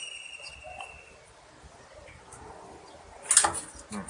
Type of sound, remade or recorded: recorded